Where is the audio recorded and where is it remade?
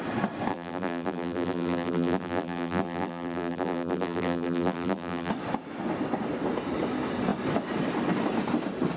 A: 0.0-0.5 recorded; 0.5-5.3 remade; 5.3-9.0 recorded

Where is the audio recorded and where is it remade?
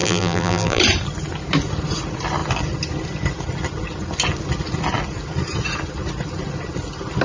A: 0.0-0.8 remade; 0.8-7.2 recorded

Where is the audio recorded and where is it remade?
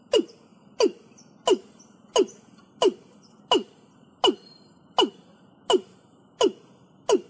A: 0.0-7.3 recorded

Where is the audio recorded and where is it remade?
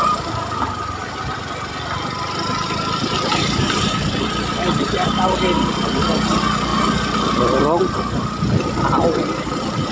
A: 0.0-1.0 recorded; 1.0-6.0 remade; 6.0-9.9 recorded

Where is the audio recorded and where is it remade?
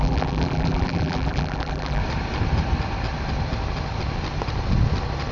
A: 0.0-2.0 remade; 2.0-5.3 recorded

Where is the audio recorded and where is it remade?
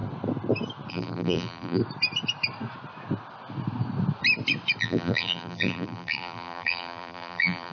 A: 0.0-0.9 recorded; 0.9-1.8 remade; 1.8-4.8 recorded; 4.8-7.7 remade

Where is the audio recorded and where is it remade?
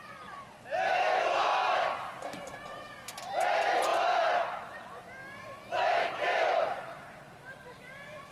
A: 0.0-3.9 remade; 3.9-4.7 recorded; 4.7-5.2 remade; 5.2-5.9 recorded; 5.9-8.3 remade